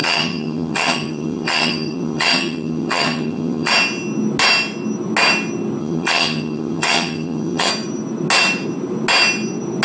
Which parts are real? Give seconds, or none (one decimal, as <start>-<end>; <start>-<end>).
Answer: 3.7-5.8; 7.7-9.8